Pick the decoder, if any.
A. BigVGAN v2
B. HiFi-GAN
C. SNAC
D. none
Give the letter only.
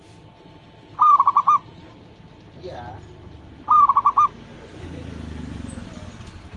D